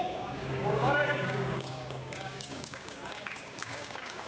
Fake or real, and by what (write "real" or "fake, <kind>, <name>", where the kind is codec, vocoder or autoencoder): fake, codec, DAC